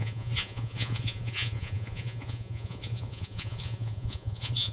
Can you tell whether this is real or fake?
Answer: fake